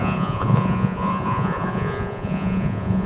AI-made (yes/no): yes